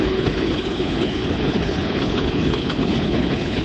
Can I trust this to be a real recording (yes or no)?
no